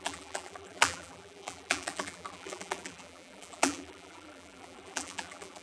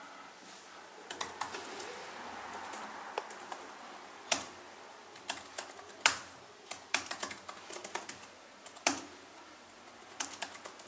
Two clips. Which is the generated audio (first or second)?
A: first